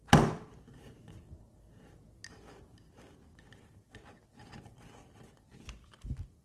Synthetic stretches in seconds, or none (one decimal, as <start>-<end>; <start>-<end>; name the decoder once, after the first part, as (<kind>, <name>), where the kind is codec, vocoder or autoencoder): none